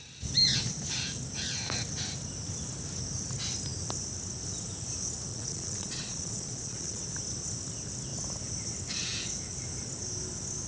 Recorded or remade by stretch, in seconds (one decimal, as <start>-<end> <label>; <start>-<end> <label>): 0.0-5.3 recorded; 5.3-7.0 remade; 7.0-10.7 recorded